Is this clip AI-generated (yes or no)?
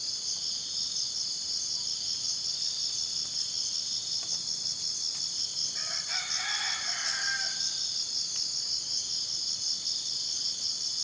no